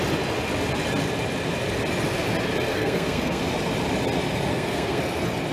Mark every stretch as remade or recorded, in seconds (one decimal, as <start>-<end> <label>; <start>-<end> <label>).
0.0-2.7 recorded; 2.7-3.4 remade; 3.4-4.5 recorded; 4.5-5.0 remade; 5.0-5.5 recorded